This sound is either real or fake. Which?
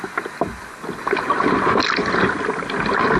real